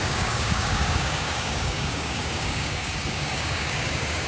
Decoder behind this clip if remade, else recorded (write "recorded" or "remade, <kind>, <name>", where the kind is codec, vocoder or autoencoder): remade, codec, DAC